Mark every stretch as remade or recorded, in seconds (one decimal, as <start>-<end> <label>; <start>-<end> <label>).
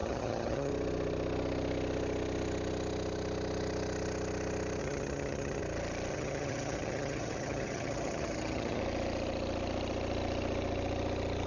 0.0-0.7 remade; 0.7-4.8 recorded; 4.8-5.6 remade; 5.6-6.1 recorded; 6.1-8.8 remade; 8.8-11.5 recorded